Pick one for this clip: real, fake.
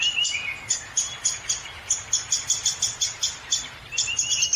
real